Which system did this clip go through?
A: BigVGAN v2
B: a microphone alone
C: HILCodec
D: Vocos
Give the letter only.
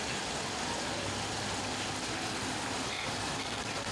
B